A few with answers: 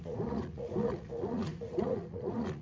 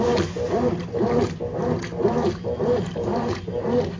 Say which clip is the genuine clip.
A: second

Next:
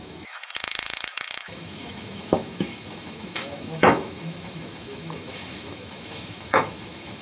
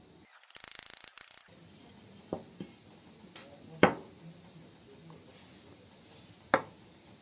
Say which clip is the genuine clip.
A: second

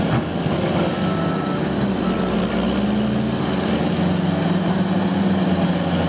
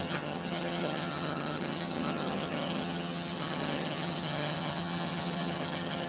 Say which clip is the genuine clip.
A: first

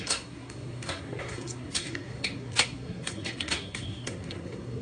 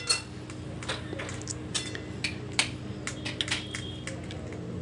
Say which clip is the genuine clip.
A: second